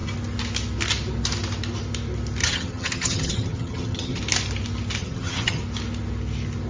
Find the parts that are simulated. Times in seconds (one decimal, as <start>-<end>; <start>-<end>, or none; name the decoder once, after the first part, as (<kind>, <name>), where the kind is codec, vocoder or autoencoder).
2.4-4.2 (vocoder, HiFi-GAN); 5.0-5.6